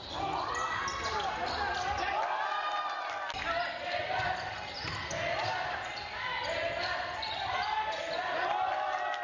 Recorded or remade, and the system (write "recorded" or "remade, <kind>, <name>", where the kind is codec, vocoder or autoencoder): recorded